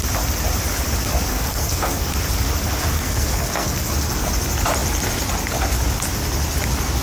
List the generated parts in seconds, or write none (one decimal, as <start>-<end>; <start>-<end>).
1.3-2.1; 2.9-4.3